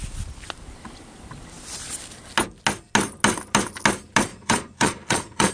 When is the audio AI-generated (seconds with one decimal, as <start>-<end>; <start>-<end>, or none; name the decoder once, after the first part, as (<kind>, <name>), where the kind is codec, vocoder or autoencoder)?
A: 4.3-5.5 (vocoder, Vocos)